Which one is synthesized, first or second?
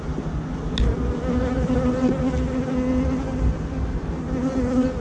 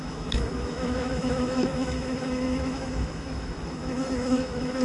second